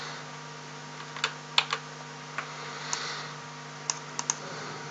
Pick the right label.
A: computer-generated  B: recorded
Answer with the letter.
B